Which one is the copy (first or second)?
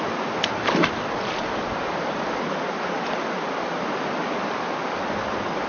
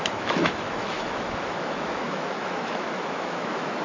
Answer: second